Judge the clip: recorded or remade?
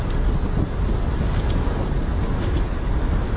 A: recorded